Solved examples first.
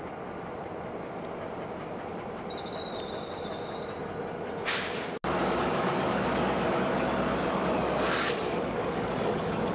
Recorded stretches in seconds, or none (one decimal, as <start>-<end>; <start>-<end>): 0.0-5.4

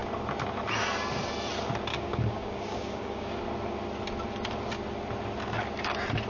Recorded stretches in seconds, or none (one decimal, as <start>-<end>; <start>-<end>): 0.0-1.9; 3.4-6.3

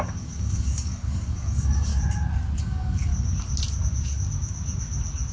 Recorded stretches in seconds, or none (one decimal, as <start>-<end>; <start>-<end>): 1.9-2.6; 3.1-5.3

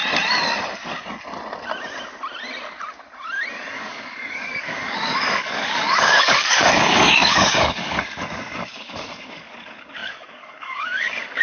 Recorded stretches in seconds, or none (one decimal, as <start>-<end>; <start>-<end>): 0.0-3.7

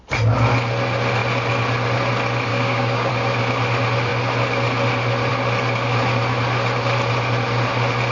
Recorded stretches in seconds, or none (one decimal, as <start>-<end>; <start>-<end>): 0.0-2.5; 3.1-8.1